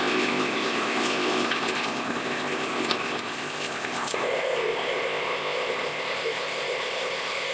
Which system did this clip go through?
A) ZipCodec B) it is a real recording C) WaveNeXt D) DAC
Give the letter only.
A